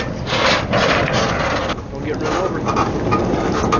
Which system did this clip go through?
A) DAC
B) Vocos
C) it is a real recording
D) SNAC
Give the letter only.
C